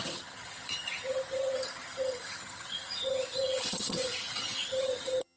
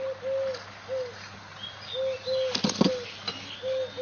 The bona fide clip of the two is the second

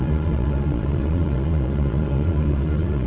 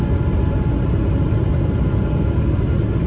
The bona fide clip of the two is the second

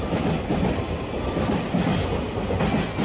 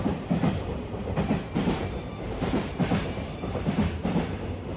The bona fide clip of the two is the first